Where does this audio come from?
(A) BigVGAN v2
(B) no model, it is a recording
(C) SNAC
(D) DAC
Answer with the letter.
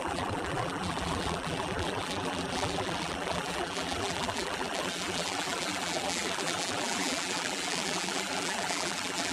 A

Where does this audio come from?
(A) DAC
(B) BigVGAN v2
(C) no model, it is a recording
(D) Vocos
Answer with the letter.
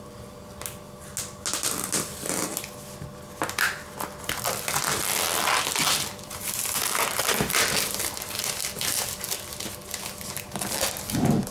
C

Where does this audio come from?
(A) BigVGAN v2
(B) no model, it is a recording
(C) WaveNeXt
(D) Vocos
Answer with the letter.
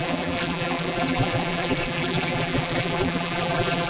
A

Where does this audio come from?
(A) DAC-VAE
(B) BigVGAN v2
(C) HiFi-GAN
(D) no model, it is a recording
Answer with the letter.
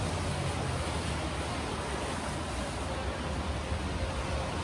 D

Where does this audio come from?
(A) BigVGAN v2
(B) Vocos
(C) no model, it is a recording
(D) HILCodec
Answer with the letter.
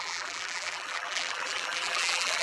A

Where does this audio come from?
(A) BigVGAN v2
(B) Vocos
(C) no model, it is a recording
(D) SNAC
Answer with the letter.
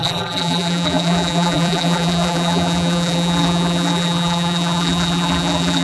A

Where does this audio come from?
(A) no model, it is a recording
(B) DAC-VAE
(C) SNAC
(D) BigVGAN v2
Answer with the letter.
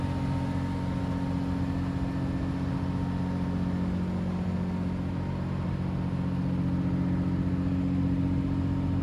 A